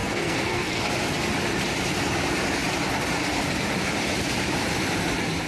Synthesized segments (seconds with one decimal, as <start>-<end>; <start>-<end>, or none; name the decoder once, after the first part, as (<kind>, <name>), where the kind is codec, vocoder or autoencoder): 0.0-0.8 (codec, SNAC)